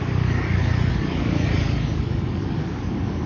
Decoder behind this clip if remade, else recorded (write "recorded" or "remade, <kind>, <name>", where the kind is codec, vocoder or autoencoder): remade, codec, DAC